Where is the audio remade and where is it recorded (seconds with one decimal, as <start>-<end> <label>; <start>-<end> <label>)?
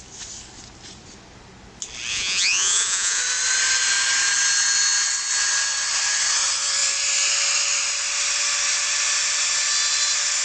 0.0-2.1 recorded; 2.1-3.2 remade; 3.2-10.4 recorded